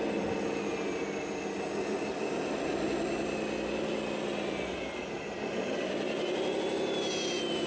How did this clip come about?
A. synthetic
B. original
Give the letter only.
B